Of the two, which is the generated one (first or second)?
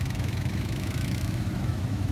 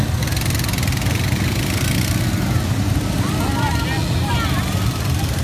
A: first